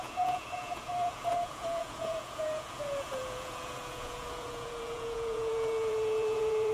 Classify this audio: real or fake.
fake